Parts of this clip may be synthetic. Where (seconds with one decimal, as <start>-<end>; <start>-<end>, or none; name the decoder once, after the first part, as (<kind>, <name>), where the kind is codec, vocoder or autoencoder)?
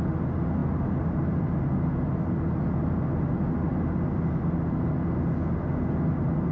none